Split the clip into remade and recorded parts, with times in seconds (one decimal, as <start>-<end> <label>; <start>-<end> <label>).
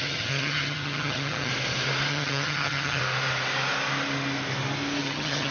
0.0-1.5 remade; 1.5-2.1 recorded; 2.1-3.0 remade; 3.0-5.0 recorded; 5.0-5.5 remade